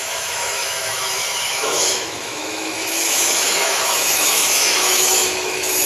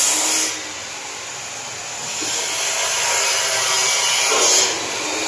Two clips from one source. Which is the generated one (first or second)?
first